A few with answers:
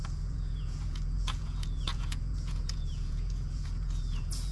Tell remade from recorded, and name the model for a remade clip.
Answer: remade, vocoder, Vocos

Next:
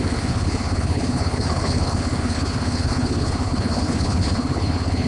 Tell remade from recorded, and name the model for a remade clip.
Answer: remade, codec, HILCodec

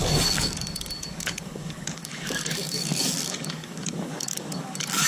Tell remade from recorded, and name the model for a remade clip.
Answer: remade, codec, DAC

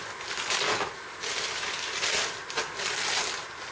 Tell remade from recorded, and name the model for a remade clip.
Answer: recorded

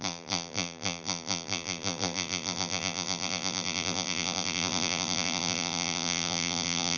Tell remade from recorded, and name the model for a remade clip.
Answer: remade, vocoder, BigVGAN v2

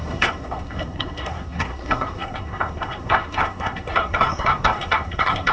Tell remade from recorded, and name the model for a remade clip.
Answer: remade, codec, SNAC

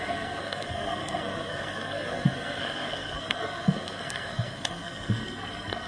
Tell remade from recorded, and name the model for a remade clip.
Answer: remade, codec, SNAC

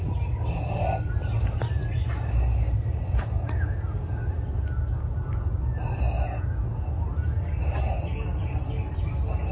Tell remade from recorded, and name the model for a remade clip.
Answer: recorded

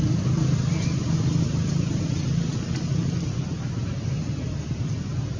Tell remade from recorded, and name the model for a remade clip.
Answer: remade, vocoder, BigVGAN v2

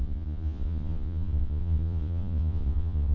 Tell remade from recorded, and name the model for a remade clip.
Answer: remade, vocoder, Vocos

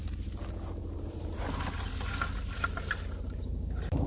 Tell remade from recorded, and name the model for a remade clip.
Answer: recorded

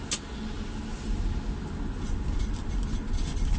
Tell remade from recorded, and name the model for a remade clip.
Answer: recorded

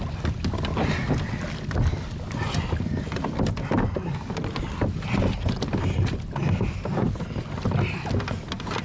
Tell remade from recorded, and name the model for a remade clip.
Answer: recorded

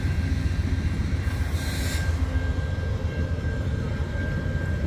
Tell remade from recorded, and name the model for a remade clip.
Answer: recorded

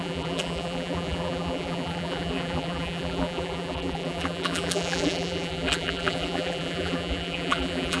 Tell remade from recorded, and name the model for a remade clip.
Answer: remade, vocoder, BigVGAN v2